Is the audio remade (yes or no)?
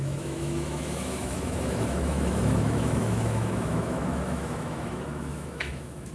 yes